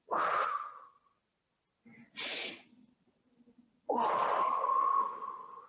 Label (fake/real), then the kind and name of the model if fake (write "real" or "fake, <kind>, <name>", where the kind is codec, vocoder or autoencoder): real